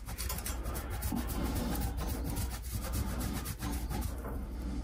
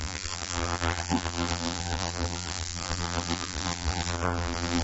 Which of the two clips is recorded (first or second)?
first